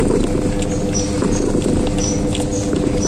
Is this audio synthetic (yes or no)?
no